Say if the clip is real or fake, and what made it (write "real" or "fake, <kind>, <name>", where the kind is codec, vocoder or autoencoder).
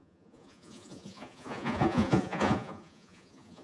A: fake, vocoder, Vocos